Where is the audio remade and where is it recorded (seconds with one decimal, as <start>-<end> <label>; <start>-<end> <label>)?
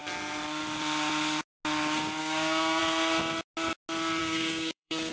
0.0-2.2 recorded; 2.2-2.8 remade; 2.8-4.2 recorded; 4.2-5.1 remade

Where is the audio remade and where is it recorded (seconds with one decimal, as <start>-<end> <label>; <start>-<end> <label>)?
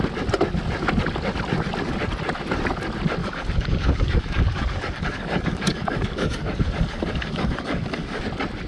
0.0-3.2 recorded; 3.2-8.2 remade; 8.2-8.7 recorded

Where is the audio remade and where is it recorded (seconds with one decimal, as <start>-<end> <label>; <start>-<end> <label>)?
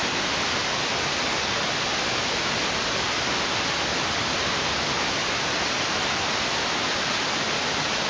0.0-8.1 recorded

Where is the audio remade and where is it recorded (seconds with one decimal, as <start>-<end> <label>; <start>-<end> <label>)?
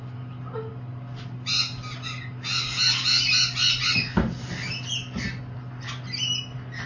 0.0-6.9 recorded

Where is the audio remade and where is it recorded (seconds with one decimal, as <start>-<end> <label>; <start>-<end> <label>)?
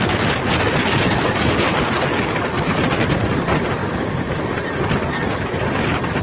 0.0-3.8 recorded; 3.8-4.4 remade; 4.4-6.2 recorded